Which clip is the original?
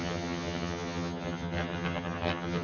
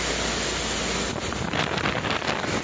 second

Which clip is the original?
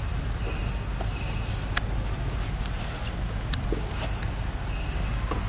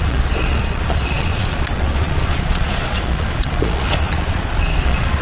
first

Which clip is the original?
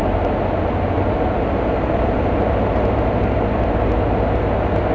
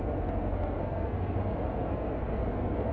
first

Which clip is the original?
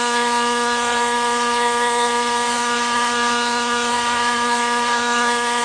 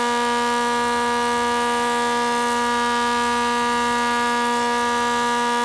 second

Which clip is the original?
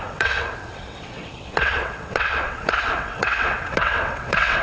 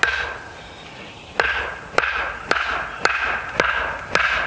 second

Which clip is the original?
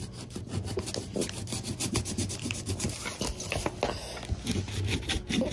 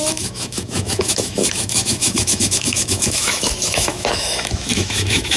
first